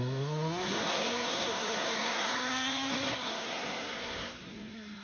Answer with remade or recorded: remade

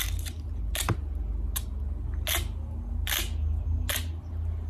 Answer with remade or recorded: recorded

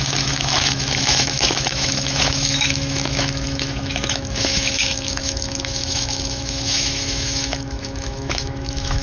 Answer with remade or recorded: remade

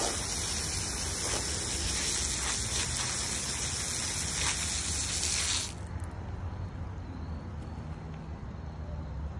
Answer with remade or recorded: recorded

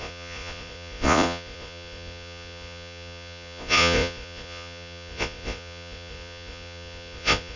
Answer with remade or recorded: remade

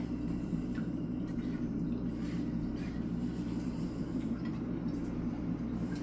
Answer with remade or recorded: remade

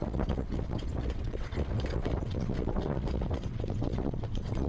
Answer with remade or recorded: remade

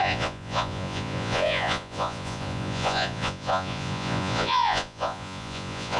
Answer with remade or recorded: remade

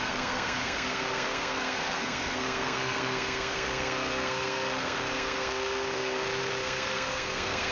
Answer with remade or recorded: remade